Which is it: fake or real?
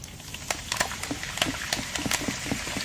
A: real